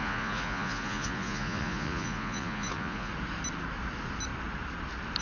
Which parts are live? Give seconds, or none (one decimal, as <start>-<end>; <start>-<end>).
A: 3.1-5.2